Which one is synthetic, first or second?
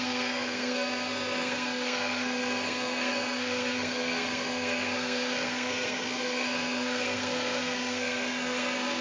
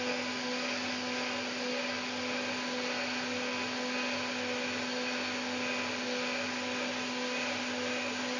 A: first